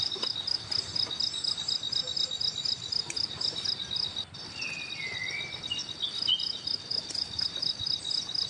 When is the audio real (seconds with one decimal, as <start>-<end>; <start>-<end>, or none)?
0.0-8.5